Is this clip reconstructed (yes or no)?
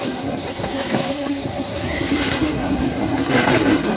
yes